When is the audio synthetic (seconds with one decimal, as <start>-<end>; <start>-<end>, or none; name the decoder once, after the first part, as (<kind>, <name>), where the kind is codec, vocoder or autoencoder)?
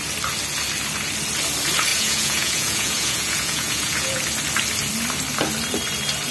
1.9-4.2 (vocoder, Vocos)